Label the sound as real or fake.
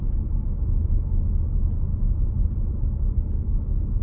real